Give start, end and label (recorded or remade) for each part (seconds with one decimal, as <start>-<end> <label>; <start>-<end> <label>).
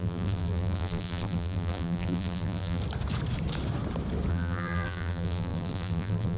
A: 0.0-2.8 remade; 2.8-4.3 recorded; 4.3-6.4 remade